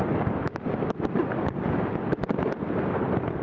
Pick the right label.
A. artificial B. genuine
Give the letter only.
B